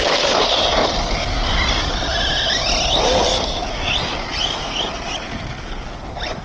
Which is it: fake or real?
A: real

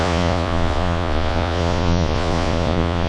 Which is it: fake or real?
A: fake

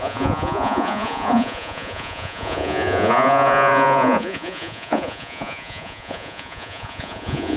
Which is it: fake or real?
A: fake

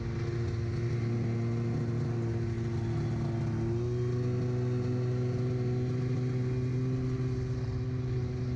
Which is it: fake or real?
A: real